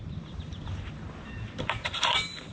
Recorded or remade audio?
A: remade